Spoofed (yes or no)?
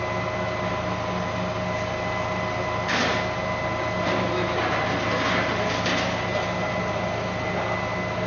no